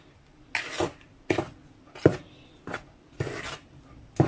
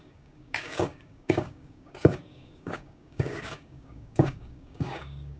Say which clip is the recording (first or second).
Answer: first